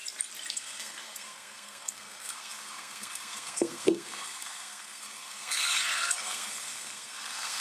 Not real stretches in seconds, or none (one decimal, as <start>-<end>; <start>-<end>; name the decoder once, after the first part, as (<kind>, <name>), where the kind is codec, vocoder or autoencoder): 0.5-7.6 (codec, SNAC)